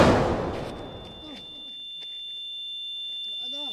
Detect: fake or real real